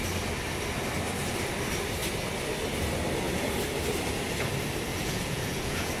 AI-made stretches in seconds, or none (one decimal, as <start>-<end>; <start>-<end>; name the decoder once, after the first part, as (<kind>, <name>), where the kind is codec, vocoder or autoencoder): 4.9-6.0 (vocoder, Vocos)

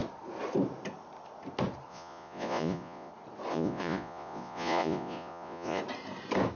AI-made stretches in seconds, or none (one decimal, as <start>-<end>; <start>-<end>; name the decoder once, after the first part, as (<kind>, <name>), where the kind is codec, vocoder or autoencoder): 1.9-3.1 (vocoder, Vocos); 3.5-5.8

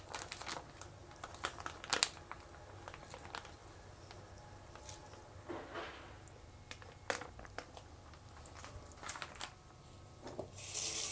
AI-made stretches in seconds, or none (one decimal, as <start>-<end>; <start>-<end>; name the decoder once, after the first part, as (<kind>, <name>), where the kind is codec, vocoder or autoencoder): none

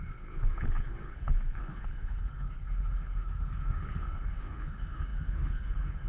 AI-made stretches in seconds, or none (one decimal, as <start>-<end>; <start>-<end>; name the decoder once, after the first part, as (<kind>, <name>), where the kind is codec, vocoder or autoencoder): 0.0-6.1 (codec, HILCodec)